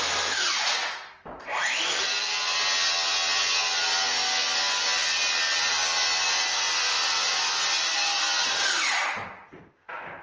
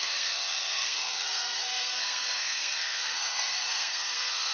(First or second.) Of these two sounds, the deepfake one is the second